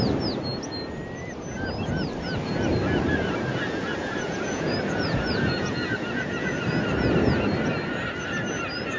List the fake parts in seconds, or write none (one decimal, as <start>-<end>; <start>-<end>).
3.5-6.6